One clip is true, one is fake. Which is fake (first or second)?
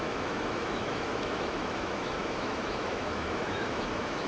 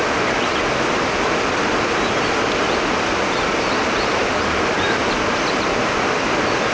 first